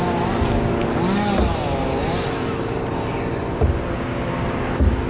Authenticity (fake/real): real